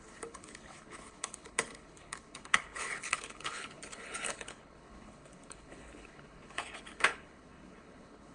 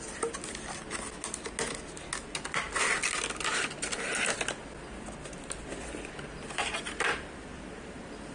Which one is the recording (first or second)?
second